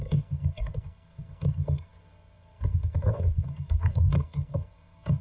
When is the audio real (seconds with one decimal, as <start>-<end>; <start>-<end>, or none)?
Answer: none